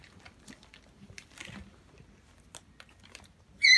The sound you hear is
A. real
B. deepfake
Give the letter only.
A